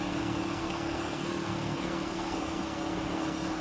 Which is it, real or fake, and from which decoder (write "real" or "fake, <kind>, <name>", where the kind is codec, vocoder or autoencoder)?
fake, codec, SNAC